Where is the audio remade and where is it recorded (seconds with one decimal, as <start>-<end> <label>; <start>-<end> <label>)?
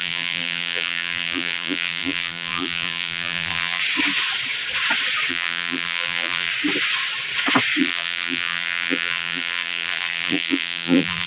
0.0-3.8 remade; 3.8-5.3 recorded; 5.3-6.5 remade; 6.5-7.8 recorded; 7.8-11.3 remade